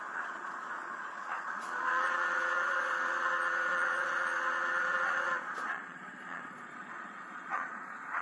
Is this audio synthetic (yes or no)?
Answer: yes